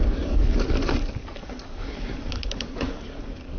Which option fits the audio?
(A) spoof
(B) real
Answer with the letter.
A